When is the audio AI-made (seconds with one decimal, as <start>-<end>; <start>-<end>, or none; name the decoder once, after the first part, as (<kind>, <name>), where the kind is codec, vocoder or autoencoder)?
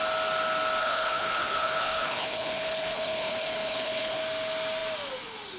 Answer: 0.8-4.2 (codec, HILCodec)